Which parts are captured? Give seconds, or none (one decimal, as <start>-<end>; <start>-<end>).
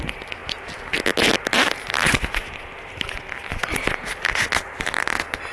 0.0-5.5